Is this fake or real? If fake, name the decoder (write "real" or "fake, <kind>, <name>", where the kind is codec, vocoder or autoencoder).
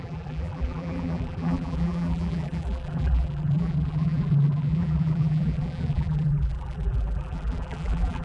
fake, vocoder, BigVGAN v2